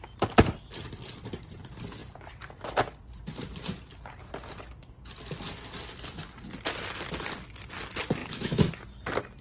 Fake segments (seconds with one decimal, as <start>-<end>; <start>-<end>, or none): 8.2-8.7